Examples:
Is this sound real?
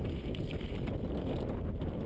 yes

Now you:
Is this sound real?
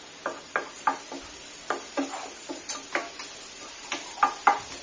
yes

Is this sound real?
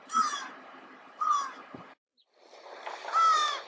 yes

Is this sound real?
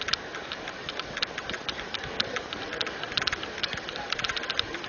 no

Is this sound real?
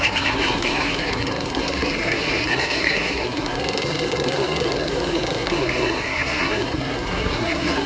no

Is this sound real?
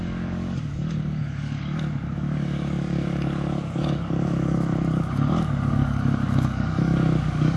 no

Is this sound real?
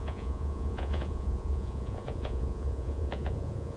no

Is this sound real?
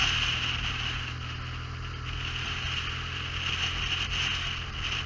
yes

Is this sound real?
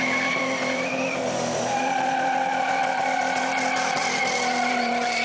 no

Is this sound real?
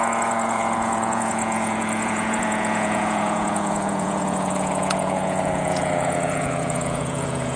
no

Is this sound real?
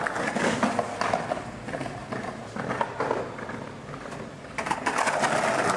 yes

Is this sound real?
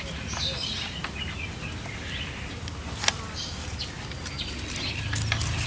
yes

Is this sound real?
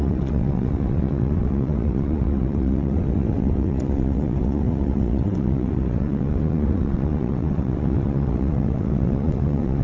no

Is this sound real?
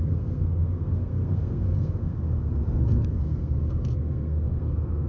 no